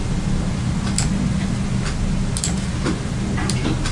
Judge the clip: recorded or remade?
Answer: recorded